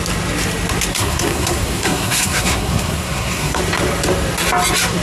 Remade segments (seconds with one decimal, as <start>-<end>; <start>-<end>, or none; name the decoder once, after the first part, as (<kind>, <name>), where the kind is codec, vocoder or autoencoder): 0.9-3.6 (codec, SNAC)